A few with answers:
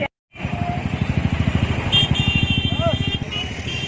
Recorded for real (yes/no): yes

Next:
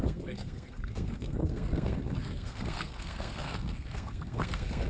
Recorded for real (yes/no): no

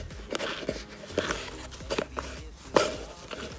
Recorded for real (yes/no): yes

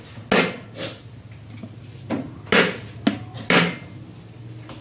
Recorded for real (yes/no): yes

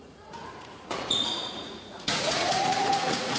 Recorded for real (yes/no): no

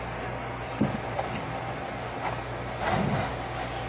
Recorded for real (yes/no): yes